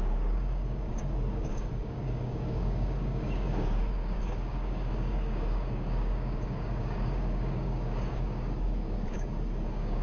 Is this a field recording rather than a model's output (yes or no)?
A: no